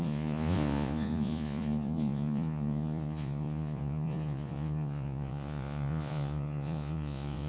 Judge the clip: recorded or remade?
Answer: remade